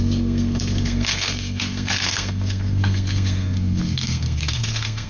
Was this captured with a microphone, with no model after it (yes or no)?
no